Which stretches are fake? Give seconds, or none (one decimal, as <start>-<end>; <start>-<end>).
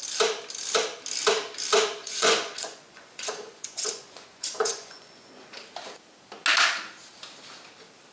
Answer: 2.0-5.5